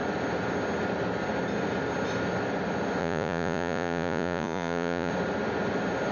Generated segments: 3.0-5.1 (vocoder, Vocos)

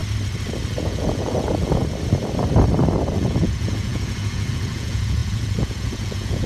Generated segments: 0.8-1.8 (vocoder, Vocos); 3.1-6.5

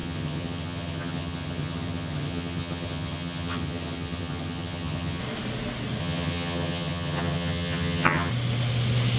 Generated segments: 0.0-5.2 (vocoder, HiFi-GAN); 6.0-8.3

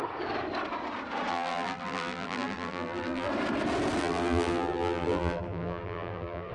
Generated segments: 1.3-3.3 (vocoder, BigVGAN v2); 4.0-6.5

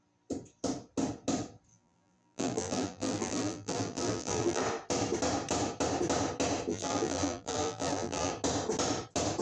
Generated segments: 1.7-4.6 (vocoder, BigVGAN v2); 6.7-8.3

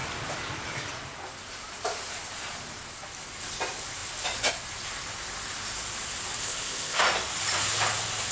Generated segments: 6.4-7.0 (codec, ZipCodec)

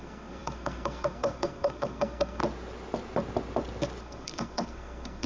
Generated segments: 0.0-2.4 (codec, SNAC); 4.0-5.3